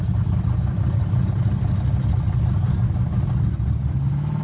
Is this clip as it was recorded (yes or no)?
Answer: yes